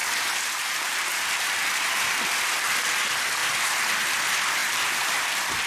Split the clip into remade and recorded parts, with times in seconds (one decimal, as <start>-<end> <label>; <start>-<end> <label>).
0.0-0.9 remade; 0.9-3.4 recorded; 3.4-4.1 remade; 4.1-4.6 recorded; 4.6-5.7 remade